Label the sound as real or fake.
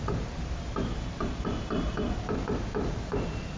fake